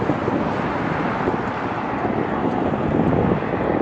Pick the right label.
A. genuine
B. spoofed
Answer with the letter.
A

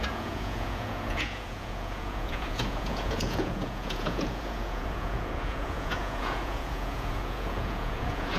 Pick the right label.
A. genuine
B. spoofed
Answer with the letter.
B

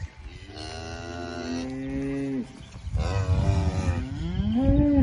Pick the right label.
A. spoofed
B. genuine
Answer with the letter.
B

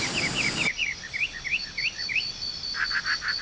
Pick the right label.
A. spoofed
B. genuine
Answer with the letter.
B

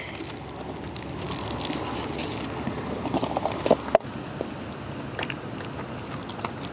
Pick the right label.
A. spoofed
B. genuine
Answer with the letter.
B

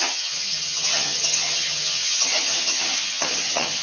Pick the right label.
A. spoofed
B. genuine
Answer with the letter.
A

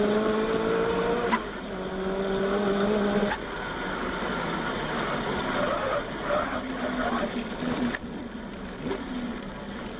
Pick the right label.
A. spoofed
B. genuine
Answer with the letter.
A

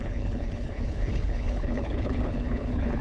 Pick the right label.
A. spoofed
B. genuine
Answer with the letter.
A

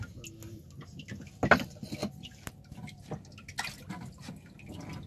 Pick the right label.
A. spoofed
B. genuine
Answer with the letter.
B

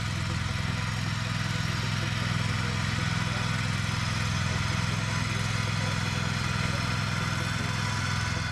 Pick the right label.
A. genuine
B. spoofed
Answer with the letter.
A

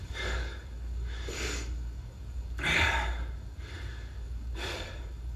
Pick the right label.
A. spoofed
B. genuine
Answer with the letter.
A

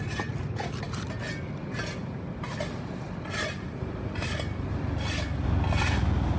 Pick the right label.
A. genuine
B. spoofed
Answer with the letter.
A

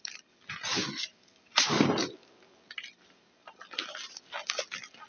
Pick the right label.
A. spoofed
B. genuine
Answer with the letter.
B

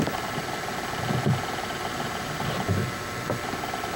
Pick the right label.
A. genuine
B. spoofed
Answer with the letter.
A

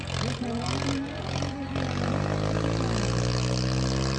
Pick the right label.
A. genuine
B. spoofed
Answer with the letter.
A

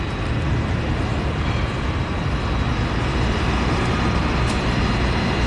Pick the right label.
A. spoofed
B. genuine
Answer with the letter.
B